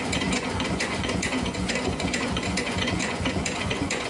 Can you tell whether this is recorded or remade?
remade